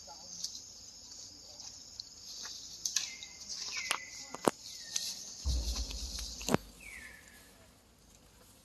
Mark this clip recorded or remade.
recorded